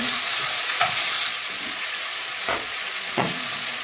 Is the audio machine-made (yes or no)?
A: yes